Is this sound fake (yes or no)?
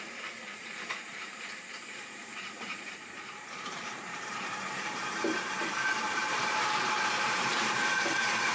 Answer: yes